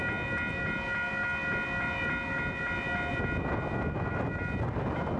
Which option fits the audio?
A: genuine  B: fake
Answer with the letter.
A